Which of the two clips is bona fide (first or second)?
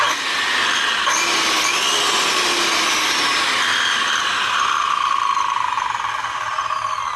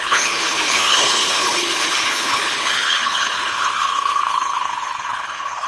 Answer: first